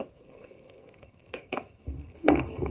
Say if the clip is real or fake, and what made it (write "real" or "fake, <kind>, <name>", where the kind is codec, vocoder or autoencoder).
fake, codec, SNAC